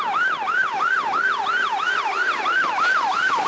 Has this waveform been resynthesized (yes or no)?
no